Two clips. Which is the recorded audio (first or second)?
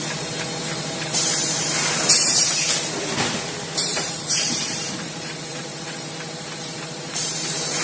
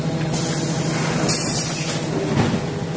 second